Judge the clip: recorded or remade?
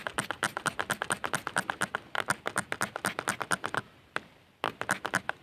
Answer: recorded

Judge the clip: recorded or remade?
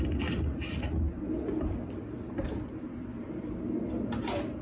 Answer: recorded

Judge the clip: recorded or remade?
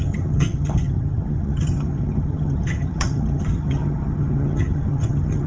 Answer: remade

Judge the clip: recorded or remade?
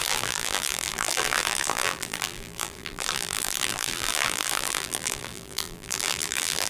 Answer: remade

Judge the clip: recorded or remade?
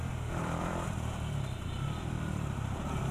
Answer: remade